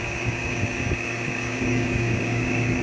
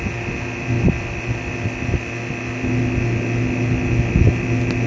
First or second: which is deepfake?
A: first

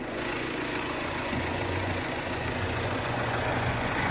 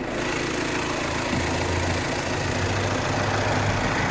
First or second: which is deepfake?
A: first